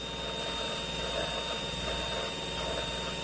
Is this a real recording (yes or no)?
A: yes